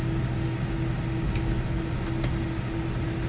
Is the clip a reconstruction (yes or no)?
no